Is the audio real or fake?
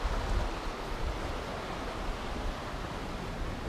real